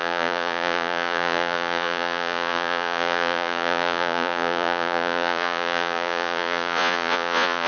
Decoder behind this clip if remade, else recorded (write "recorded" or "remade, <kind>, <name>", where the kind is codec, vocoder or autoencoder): remade, vocoder, Vocos